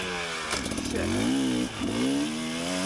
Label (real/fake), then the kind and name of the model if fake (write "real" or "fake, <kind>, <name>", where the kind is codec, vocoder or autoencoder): real